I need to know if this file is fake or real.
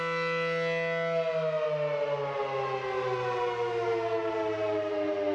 real